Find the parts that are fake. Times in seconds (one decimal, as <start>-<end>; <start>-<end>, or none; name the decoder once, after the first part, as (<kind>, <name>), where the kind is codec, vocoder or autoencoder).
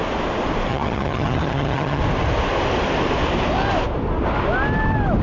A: 0.7-2.0 (vocoder, HiFi-GAN)